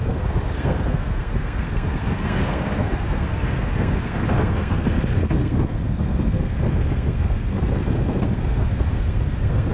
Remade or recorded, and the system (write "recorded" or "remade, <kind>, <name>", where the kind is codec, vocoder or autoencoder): remade, codec, SNAC